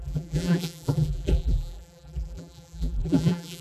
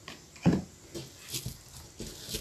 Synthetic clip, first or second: first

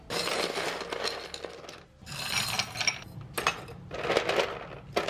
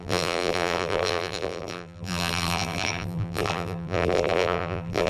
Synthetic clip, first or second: second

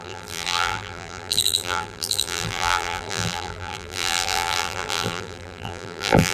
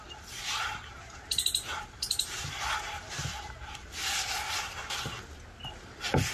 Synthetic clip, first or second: first